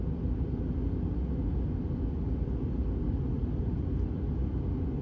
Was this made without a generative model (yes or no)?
yes